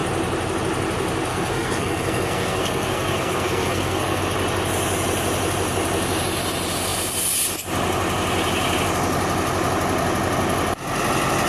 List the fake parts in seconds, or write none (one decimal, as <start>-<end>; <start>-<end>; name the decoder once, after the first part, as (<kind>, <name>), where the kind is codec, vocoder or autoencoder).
1.3-4.2 (codec, SNAC)

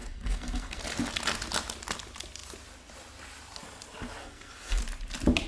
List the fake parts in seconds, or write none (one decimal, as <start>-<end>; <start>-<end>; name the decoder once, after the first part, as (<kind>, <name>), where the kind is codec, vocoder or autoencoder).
0.0-0.8 (codec, SNAC); 4.2-4.8

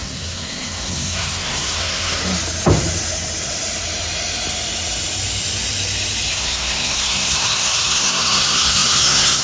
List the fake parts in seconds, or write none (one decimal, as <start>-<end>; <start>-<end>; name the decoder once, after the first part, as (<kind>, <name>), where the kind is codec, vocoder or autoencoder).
0.0-2.2 (codec, SNAC); 6.3-9.4

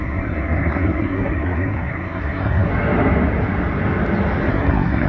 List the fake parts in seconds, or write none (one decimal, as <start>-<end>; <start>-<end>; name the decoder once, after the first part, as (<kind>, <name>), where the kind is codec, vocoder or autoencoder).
0.0-2.7 (codec, SNAC); 4.5-5.1

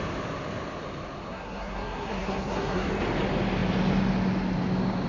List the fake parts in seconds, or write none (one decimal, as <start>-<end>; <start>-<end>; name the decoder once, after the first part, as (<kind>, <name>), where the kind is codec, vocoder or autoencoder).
1.2-2.9 (codec, SNAC)

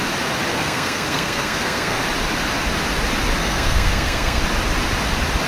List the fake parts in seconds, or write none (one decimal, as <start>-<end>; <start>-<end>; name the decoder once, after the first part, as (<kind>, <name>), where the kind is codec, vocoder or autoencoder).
0.5-2.0 (codec, SNAC); 3.4-4.4